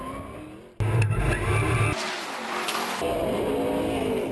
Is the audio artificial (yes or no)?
no